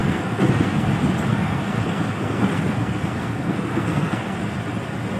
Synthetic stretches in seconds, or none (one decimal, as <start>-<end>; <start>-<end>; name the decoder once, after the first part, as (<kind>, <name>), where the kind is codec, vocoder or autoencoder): 0.0-0.9 (codec, SNAC); 1.3-4.4